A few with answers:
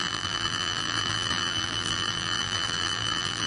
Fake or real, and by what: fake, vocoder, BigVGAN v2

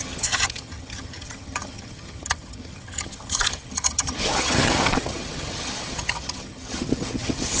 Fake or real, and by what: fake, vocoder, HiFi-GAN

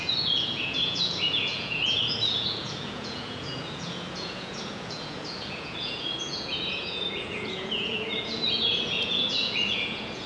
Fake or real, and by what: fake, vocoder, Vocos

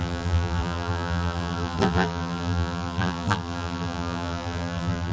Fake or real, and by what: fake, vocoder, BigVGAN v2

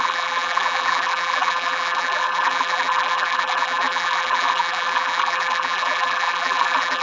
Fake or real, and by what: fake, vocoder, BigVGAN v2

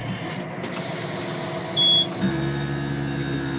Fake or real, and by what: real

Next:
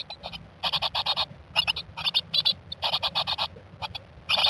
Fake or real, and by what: real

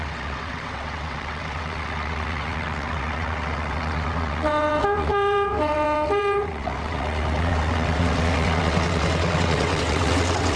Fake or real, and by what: fake, vocoder, WaveNeXt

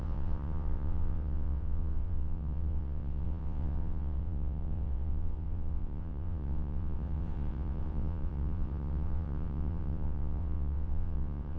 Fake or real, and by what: fake, vocoder, WaveNeXt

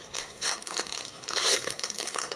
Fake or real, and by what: fake, codec, SNAC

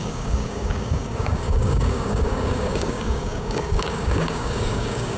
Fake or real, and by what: fake, codec, DAC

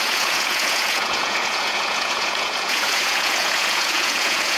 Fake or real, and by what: fake, vocoder, Vocos